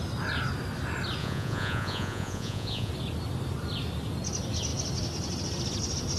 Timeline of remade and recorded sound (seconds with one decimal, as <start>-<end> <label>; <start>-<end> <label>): 0.0-1.2 recorded; 1.2-2.9 remade; 2.9-6.2 recorded